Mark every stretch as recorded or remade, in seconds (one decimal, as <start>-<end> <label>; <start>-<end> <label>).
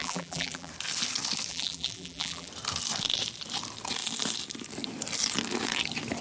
0.0-0.7 remade; 0.7-1.5 recorded; 1.5-2.5 remade; 2.5-6.2 recorded